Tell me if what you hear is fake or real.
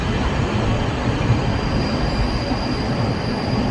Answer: real